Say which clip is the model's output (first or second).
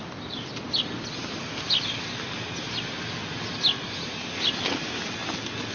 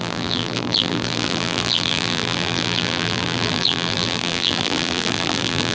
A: second